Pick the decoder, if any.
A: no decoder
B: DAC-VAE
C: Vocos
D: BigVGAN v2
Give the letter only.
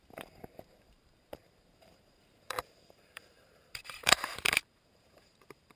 D